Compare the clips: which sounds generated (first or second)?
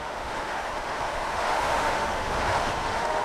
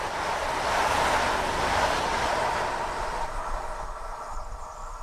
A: first